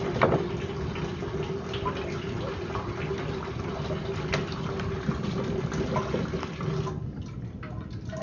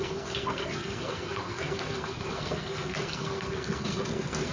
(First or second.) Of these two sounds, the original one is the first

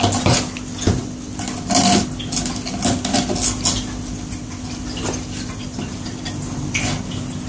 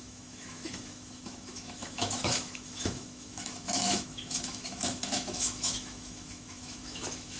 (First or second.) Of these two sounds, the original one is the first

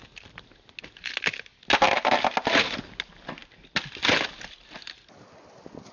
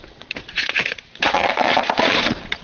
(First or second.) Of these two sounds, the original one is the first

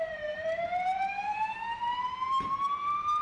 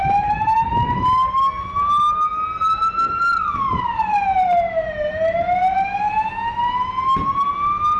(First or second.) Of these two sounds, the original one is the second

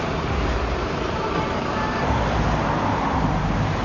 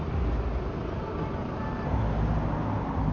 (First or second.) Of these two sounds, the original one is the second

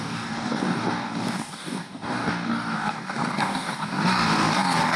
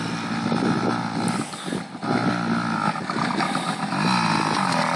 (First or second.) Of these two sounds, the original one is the second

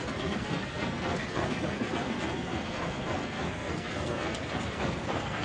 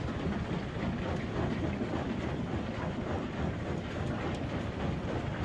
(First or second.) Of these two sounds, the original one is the second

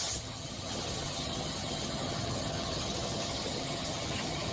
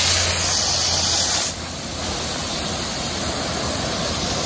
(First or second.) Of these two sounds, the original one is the second